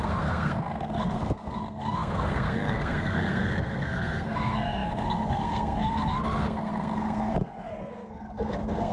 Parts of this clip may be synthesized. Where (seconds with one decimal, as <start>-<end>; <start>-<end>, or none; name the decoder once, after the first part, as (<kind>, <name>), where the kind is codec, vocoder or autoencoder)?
0.0-8.9 (codec, SNAC)